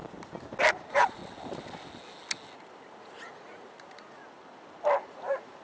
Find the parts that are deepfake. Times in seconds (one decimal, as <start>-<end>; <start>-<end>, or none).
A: 0.7-1.2; 3.0-4.2; 5.0-5.6